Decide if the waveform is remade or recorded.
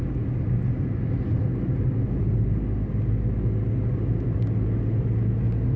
recorded